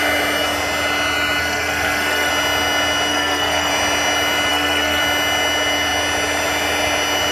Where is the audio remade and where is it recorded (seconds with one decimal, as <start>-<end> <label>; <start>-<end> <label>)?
0.0-1.4 recorded; 1.4-2.3 remade; 2.3-3.1 recorded; 3.1-3.7 remade; 3.7-4.5 recorded; 4.5-5.0 remade; 5.0-7.3 recorded